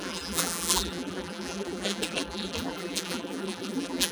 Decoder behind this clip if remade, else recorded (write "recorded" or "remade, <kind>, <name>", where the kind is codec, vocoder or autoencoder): remade, vocoder, BigVGAN v2